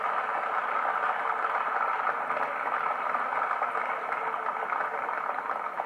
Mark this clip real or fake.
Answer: real